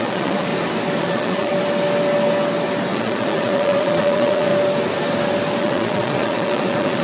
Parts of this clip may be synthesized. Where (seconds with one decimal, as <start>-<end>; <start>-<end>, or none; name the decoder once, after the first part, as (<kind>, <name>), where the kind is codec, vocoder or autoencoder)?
0.0-0.5 (vocoder, Vocos); 1.0-1.5; 2.9-4.5; 5.6-7.0